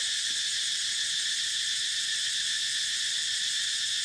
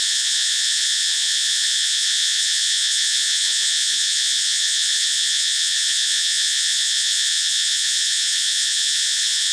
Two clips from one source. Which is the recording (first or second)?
first